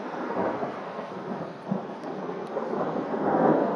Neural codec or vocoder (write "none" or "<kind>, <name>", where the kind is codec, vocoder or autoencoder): codec, SNAC